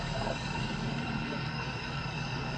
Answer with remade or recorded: remade